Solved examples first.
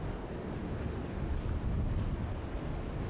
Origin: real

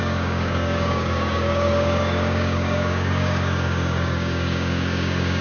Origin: fake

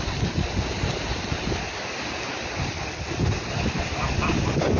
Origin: real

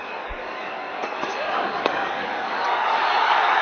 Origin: fake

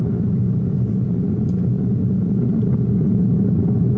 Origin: real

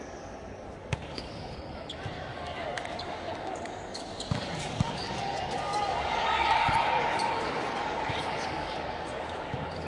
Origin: fake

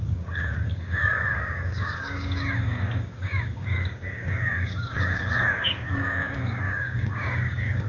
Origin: fake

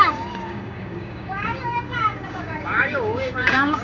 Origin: fake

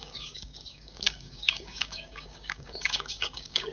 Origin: fake